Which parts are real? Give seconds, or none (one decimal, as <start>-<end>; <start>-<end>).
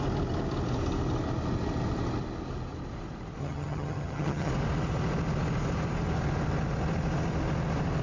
0.0-3.4; 4.5-8.0